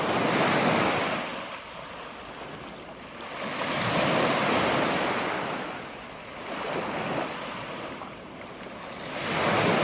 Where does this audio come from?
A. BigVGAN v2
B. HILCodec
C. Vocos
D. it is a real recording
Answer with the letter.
D